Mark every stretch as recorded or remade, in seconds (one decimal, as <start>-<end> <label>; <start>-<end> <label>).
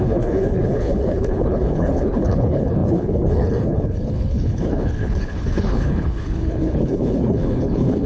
0.0-8.1 remade